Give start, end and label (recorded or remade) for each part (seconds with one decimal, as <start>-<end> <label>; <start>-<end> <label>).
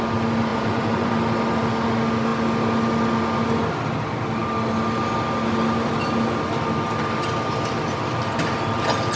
0.0-0.5 recorded; 0.5-1.1 remade; 1.1-9.2 recorded